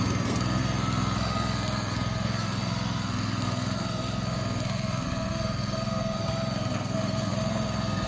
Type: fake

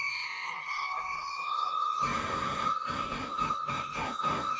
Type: fake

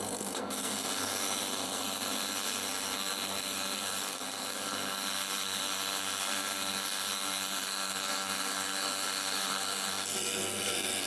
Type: fake